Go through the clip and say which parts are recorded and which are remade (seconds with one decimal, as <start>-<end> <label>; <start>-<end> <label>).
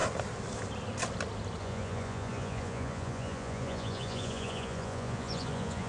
0.0-1.6 recorded; 1.6-5.9 remade